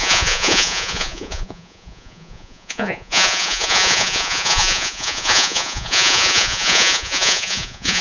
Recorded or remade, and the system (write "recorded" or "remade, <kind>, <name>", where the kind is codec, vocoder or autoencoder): remade, vocoder, Vocos